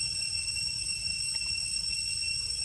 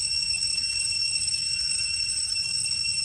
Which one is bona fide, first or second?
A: first